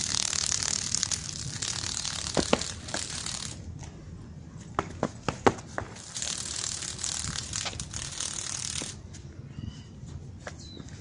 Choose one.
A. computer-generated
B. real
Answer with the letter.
B